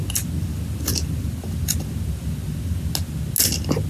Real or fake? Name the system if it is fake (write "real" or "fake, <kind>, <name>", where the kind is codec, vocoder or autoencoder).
real